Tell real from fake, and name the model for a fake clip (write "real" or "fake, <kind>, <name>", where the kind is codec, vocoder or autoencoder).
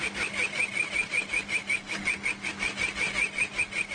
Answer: real